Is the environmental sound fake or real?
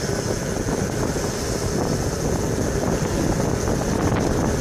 real